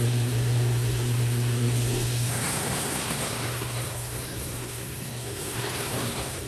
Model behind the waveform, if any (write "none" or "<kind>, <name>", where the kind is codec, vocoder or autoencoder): codec, SNAC